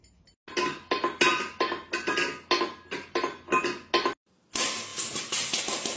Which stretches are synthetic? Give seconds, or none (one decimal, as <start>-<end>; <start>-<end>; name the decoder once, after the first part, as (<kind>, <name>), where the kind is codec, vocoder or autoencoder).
none